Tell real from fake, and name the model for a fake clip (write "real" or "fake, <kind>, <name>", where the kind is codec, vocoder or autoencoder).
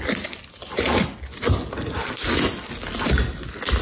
real